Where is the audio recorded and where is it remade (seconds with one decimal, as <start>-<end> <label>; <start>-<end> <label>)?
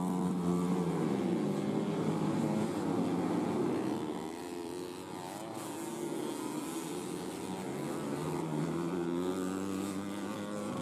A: 0.0-10.8 recorded